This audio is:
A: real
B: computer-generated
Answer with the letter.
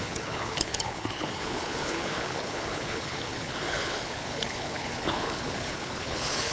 B